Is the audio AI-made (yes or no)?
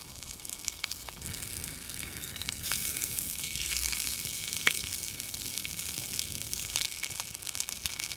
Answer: yes